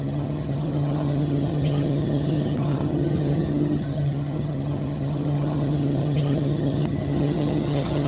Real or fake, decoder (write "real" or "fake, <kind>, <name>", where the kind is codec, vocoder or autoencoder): fake, vocoder, HiFi-GAN